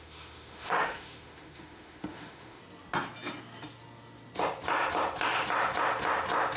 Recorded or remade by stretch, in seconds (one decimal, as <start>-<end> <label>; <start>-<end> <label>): 0.0-2.6 remade; 2.6-6.6 recorded